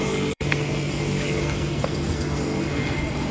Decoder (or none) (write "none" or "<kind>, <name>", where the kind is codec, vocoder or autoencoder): codec, SNAC